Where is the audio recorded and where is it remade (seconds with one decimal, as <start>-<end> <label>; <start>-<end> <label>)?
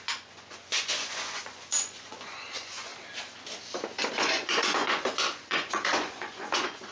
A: 0.0-2.9 remade; 2.9-4.1 recorded; 4.1-6.9 remade